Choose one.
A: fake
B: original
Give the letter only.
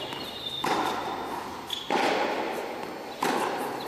B